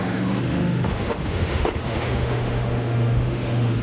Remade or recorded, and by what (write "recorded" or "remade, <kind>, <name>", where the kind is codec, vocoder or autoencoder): remade, autoencoder, DAC-VAE